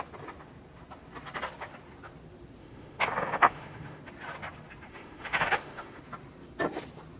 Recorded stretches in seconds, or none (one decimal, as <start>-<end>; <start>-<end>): 0.0-2.6; 4.0-4.9; 6.0-7.2